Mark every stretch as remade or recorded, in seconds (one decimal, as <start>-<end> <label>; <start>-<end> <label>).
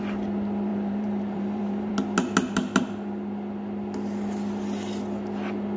0.0-0.7 recorded; 0.7-1.9 remade; 1.9-5.8 recorded